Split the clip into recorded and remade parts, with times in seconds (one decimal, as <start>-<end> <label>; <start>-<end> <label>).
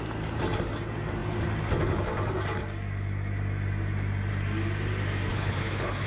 0.0-5.3 recorded; 5.3-6.1 remade